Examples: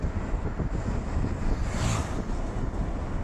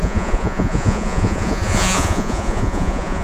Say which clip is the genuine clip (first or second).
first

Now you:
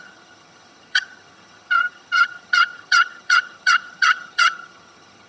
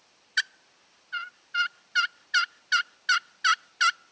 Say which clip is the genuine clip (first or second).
second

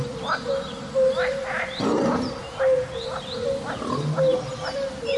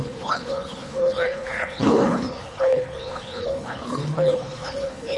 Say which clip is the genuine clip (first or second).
first